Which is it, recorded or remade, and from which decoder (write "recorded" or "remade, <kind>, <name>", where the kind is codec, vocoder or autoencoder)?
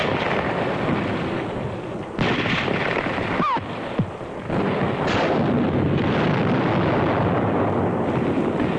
recorded